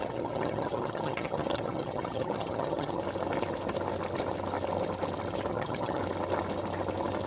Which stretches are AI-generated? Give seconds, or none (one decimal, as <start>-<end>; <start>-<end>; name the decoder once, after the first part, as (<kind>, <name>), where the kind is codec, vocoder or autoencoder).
0.0-3.0 (vocoder, HiFi-GAN); 5.5-6.0